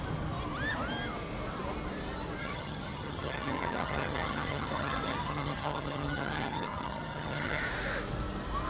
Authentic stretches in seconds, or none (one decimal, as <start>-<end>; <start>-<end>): 0.0-2.4; 7.6-8.7